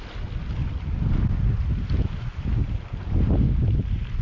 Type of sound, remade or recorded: recorded